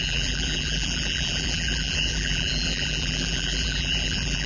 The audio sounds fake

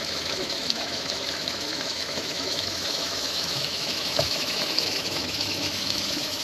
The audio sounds fake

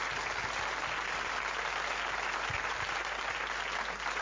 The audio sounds real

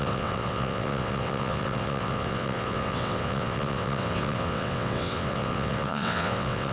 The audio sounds fake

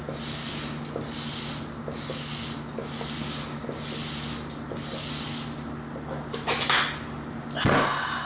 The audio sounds real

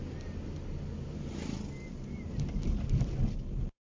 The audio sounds real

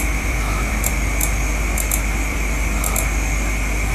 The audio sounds fake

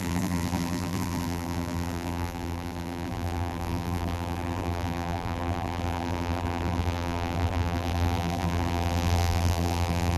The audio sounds fake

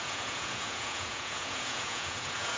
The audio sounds fake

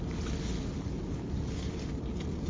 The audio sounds real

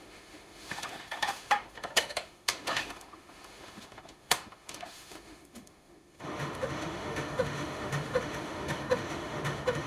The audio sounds fake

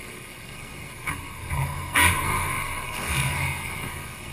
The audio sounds fake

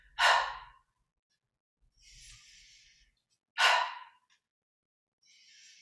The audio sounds real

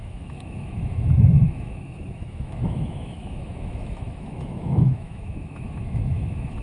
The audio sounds fake